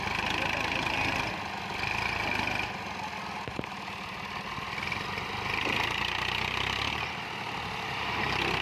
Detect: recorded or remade recorded